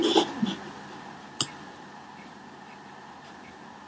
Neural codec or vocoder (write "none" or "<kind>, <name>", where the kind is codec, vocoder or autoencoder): none